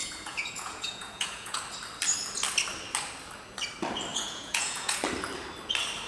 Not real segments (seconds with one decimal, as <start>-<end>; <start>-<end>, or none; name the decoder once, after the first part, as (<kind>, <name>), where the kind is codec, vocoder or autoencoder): 0.0-1.6 (vocoder, Vocos); 4.1-5.0